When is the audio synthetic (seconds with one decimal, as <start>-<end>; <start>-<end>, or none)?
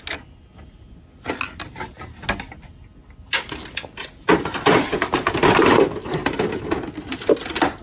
none